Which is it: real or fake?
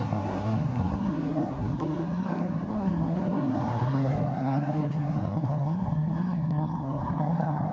fake